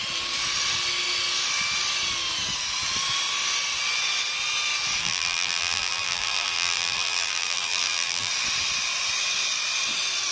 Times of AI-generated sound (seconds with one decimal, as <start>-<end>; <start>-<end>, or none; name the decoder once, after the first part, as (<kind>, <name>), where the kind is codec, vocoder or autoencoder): 5.0-8.3 (vocoder, BigVGAN v2)